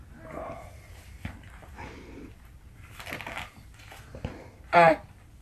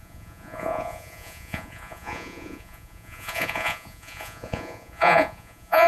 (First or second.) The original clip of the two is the first